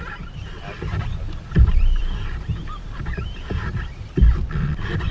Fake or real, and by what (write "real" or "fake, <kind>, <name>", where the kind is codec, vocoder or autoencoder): fake, vocoder, BigVGAN v2